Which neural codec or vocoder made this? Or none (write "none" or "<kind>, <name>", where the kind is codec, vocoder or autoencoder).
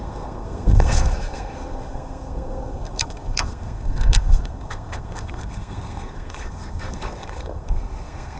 codec, SNAC